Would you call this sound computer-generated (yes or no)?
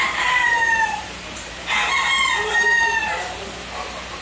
yes